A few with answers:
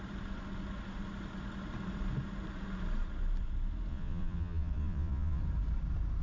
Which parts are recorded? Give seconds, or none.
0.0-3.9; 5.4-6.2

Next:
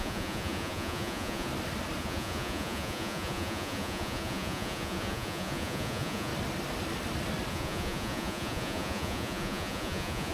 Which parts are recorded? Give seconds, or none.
1.5-2.0; 6.3-7.5

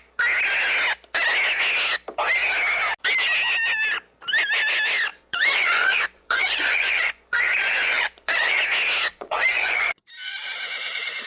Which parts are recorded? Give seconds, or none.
0.0-5.1; 8.6-9.1; 10.0-11.3

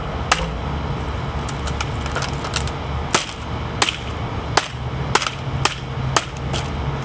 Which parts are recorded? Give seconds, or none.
0.0-7.0

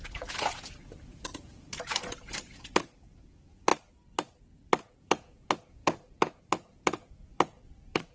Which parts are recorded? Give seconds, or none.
3.7-5.0

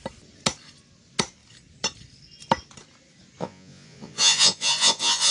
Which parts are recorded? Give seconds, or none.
0.0-3.4

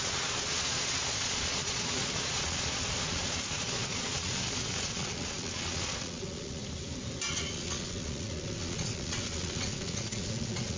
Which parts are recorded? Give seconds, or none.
6.6-7.3

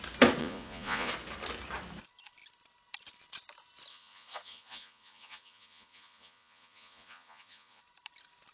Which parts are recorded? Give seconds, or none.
0.0-0.4; 1.1-3.9; 7.8-8.5